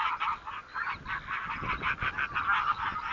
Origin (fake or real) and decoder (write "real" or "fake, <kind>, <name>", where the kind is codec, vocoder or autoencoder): real